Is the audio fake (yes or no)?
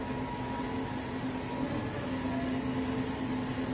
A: no